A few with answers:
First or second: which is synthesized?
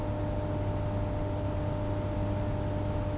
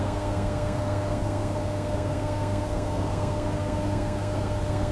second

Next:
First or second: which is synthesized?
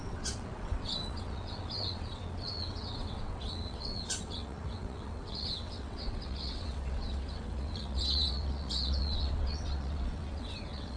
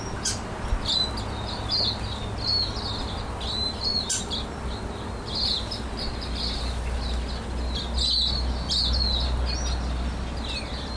first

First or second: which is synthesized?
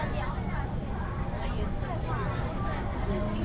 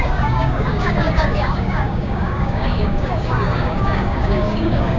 second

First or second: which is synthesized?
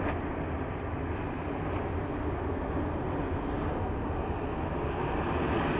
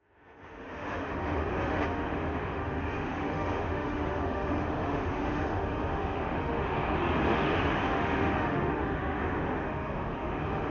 second